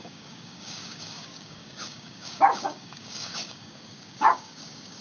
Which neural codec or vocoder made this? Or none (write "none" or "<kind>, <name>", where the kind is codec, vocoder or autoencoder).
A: codec, DAC